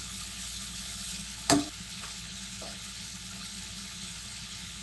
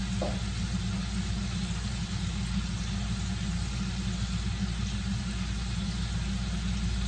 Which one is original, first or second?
second